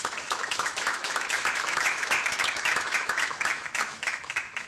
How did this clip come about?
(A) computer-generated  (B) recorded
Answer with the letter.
A